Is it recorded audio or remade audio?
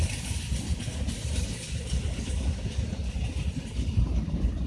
recorded